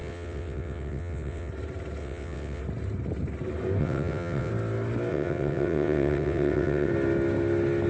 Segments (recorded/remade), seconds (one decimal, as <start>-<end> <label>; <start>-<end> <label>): 0.0-1.5 remade; 1.5-2.0 recorded; 2.0-2.6 remade; 2.6-3.8 recorded; 3.8-4.5 remade; 4.5-5.1 recorded; 5.1-6.9 remade; 6.9-7.9 recorded